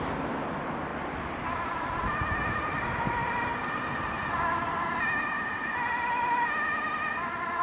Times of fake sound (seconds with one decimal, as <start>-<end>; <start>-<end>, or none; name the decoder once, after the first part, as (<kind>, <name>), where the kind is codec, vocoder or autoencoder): 0.0-0.9 (vocoder, BigVGAN v2); 1.8-3.2